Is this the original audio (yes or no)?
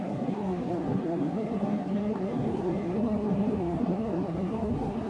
no